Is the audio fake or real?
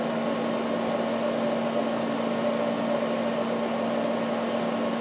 real